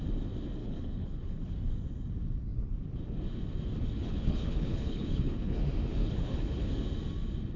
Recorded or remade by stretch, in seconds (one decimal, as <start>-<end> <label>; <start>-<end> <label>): 0.0-0.6 recorded; 0.6-1.7 remade; 1.7-4.0 recorded; 4.0-5.6 remade; 5.6-6.0 recorded; 6.0-6.7 remade; 6.7-7.6 recorded